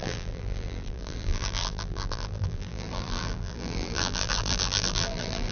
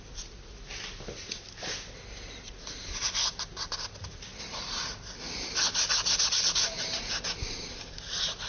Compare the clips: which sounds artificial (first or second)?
first